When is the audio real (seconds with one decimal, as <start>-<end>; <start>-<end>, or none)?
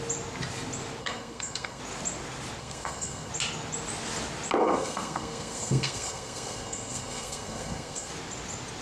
0.0-1.0; 1.8-2.6; 3.3-4.6; 8.1-8.8